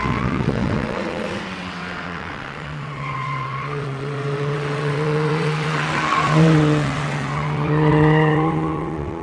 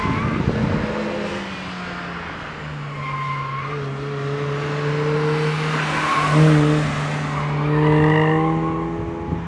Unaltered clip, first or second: second